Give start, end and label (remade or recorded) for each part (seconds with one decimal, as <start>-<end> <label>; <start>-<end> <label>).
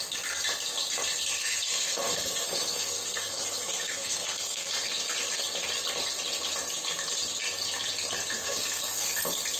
0.0-1.4 recorded; 1.4-4.7 remade; 4.7-8.4 recorded; 8.4-9.1 remade; 9.1-9.6 recorded